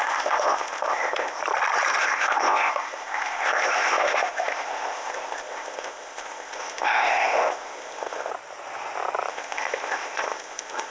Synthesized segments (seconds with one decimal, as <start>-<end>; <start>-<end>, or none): 0.0-1.4; 2.0-8.3; 9.3-10.9